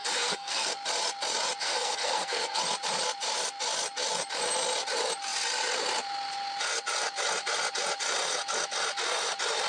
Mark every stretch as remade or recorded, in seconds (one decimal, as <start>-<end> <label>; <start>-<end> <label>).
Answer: 0.0-0.7 remade; 0.7-1.6 recorded; 1.6-2.6 remade; 2.6-9.7 recorded